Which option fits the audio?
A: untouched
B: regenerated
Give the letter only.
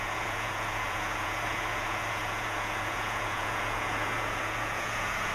B